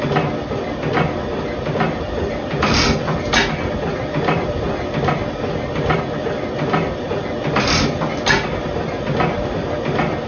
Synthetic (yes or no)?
no